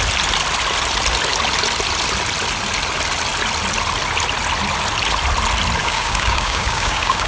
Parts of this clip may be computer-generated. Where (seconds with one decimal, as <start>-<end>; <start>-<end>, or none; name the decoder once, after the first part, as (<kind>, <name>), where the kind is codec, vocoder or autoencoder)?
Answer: 5.8-7.3 (codec, DAC)